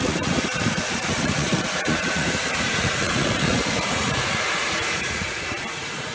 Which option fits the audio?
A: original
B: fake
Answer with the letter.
B